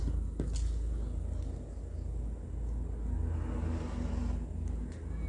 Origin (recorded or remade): recorded